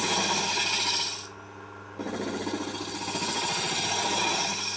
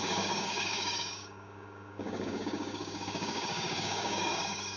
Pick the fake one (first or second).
second